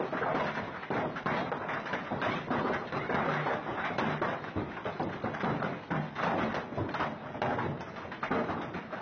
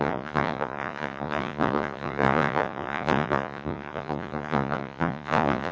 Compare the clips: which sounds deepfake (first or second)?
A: second